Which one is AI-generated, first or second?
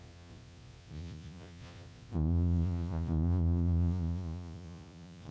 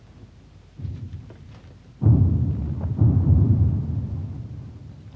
first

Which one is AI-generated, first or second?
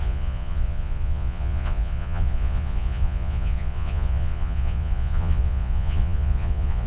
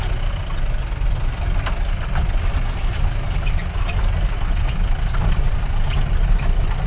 first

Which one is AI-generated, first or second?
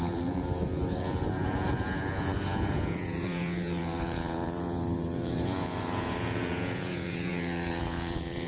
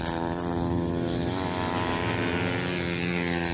first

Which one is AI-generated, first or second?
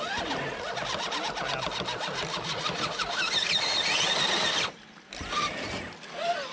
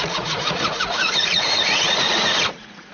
second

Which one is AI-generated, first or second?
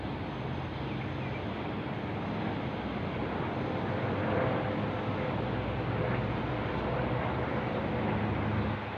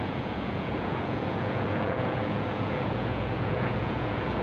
second